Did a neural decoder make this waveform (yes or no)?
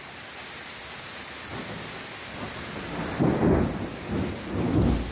no